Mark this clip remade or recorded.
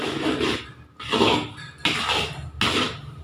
recorded